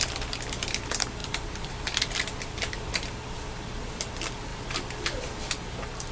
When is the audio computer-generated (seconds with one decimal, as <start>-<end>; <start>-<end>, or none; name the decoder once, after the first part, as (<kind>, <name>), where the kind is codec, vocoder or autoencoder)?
1.2-4.1 (vocoder, BigVGAN v2); 4.5-5.5

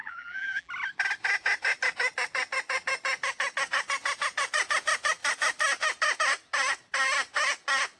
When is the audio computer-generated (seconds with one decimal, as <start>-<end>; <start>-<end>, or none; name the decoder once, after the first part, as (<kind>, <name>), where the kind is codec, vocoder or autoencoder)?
0.0-0.7 (vocoder, BigVGAN v2)

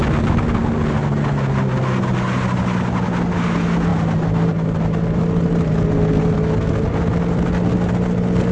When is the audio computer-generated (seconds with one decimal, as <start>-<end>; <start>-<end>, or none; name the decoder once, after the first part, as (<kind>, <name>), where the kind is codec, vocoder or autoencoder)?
none

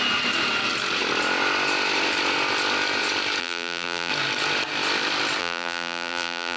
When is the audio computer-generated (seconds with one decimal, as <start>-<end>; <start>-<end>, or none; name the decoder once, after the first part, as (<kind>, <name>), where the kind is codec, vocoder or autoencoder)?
3.4-4.1 (vocoder, BigVGAN v2); 5.4-6.6

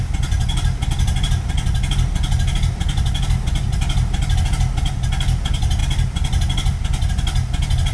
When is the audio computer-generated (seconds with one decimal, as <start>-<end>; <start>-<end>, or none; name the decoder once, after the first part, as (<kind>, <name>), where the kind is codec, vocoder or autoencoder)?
5.8-7.1 (vocoder, BigVGAN v2)

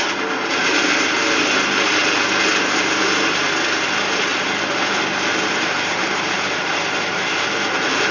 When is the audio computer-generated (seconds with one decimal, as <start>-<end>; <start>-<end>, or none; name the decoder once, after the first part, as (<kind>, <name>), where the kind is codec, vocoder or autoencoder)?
0.6-1.4 (vocoder, BigVGAN v2); 4.3-8.1

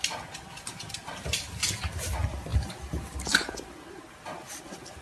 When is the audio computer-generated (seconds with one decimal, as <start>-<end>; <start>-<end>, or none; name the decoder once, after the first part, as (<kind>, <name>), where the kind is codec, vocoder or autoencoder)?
none

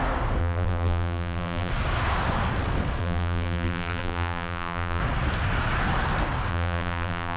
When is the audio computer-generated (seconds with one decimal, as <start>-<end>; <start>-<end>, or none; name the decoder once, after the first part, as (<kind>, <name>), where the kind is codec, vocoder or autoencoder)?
0.4-1.7 (vocoder, BigVGAN v2); 3.0-5.0; 6.5-7.4